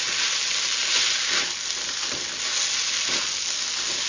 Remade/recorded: recorded